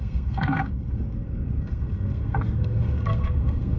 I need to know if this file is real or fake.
fake